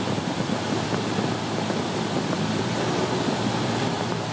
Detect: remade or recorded remade